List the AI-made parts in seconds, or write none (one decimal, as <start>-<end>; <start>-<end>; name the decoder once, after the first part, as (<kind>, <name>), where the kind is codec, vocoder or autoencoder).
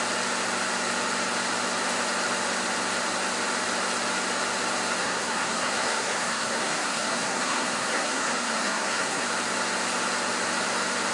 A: 5.0-9.2 (codec, SNAC)